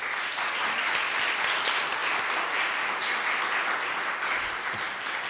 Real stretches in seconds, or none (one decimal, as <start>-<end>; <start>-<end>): 0.0-5.3